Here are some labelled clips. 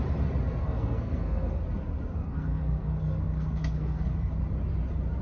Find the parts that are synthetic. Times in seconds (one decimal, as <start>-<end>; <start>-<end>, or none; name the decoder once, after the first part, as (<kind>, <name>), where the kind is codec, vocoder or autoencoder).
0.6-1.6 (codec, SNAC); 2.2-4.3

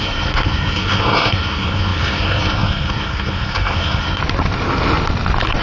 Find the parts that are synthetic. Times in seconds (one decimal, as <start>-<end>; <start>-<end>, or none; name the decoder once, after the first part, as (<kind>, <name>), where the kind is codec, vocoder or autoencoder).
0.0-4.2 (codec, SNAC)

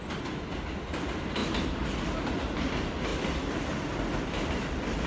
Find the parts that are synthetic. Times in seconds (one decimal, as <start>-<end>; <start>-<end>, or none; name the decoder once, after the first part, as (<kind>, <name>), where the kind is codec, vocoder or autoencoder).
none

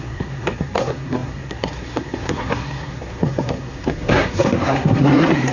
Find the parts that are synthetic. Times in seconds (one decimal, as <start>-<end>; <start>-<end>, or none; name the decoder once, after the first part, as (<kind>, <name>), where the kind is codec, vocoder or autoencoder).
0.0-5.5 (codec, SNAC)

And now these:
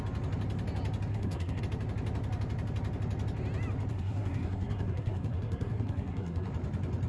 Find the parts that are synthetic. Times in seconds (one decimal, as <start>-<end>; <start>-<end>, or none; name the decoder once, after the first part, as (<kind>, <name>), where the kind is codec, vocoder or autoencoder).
1.1-1.6 (codec, SNAC); 3.9-6.5

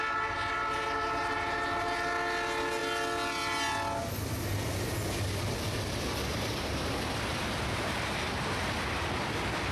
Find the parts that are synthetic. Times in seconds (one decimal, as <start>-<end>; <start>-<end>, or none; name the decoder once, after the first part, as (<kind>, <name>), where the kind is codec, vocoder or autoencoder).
none

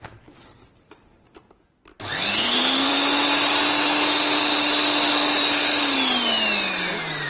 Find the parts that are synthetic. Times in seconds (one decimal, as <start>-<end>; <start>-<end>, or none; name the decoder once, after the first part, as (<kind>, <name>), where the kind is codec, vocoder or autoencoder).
2.3-2.9 (codec, SNAC)